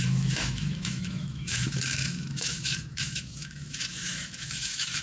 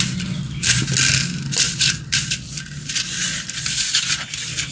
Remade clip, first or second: first